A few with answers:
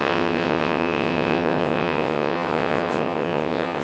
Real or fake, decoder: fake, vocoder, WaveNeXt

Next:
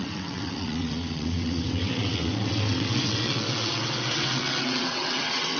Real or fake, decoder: fake, vocoder, WaveNeXt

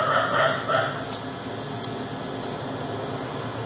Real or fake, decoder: real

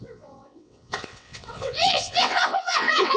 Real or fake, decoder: fake, vocoder, WaveNeXt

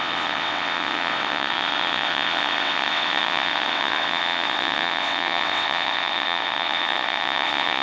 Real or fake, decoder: fake, vocoder, WaveNeXt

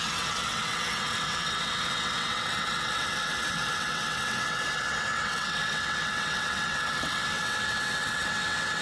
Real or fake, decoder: fake, vocoder, WaveNeXt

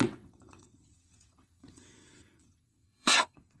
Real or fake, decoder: fake, vocoder, WaveNeXt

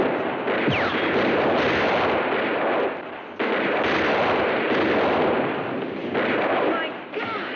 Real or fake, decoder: real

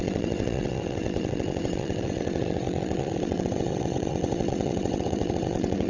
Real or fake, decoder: fake, vocoder, WaveNeXt